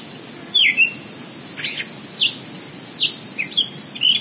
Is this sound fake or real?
real